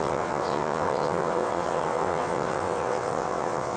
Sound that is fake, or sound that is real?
fake